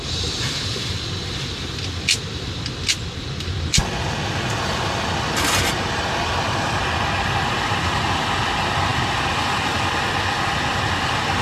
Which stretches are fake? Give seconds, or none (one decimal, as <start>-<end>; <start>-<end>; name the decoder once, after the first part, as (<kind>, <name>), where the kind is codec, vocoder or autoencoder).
none